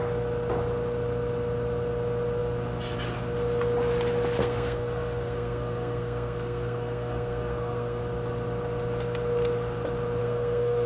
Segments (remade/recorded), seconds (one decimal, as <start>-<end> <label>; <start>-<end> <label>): 0.0-4.4 recorded; 4.4-8.0 remade; 8.0-10.2 recorded; 10.2-10.9 remade